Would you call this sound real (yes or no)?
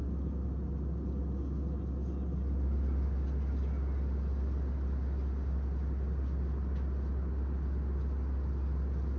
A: yes